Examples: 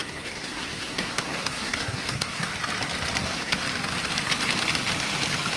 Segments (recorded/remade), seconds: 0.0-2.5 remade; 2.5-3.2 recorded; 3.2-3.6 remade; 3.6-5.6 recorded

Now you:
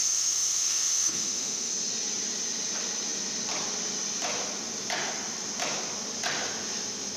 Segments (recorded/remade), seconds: 0.0-1.7 remade; 1.7-7.2 recorded

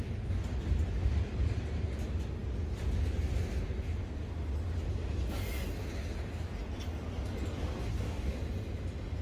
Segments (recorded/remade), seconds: 0.0-7.9 recorded; 7.9-8.4 remade; 8.4-9.2 recorded

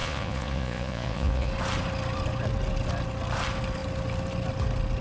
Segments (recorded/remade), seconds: 0.0-1.5 remade; 1.5-5.0 recorded